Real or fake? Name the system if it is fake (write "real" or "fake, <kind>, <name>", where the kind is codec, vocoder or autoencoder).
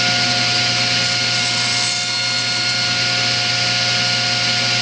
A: real